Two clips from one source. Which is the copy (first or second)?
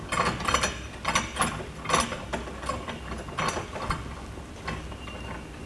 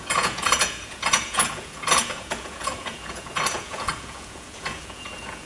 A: second